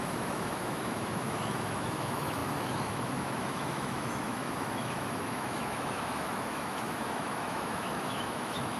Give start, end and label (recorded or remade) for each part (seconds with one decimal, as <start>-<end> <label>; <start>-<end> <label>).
0.0-8.8 remade